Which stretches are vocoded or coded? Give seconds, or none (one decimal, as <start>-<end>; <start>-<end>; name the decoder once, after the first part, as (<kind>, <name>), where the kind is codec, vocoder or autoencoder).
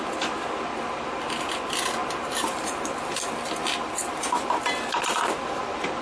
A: none